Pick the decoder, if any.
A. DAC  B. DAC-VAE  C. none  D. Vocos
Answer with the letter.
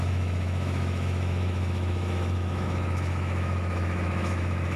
B